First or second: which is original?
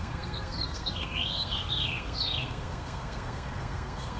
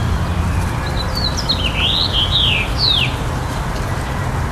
second